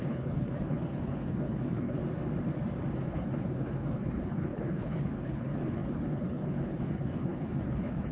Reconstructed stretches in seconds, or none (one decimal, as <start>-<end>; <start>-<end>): 0.0-2.0; 3.0-8.1